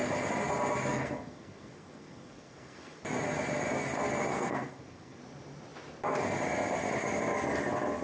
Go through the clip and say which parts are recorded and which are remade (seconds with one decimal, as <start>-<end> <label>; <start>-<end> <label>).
0.0-0.9 recorded; 0.9-3.0 remade; 3.0-4.3 recorded; 4.3-5.2 remade; 5.2-8.0 recorded